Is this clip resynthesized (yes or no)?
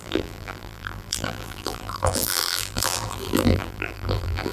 yes